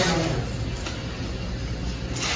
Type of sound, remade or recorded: recorded